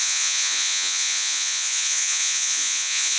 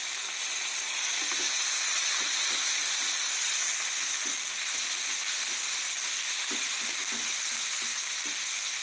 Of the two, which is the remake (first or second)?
first